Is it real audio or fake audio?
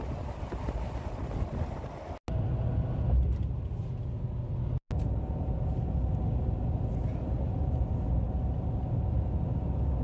real